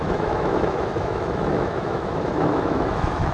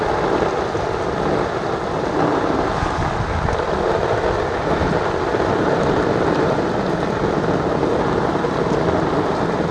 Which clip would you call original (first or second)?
second